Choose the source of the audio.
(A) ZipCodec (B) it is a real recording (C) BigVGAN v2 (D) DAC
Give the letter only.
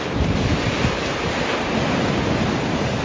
C